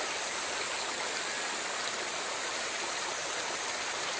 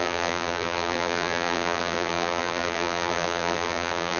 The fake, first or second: second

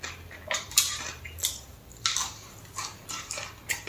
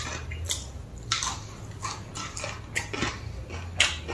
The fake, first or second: first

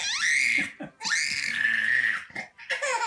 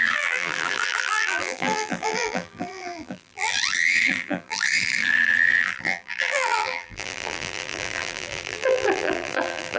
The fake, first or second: second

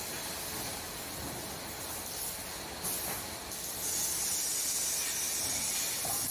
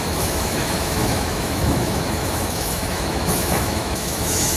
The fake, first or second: second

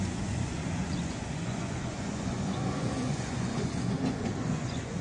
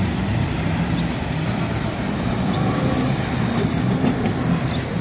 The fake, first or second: first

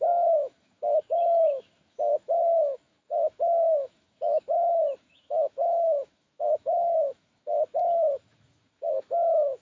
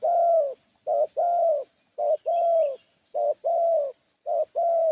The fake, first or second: first